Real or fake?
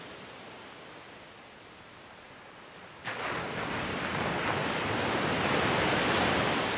real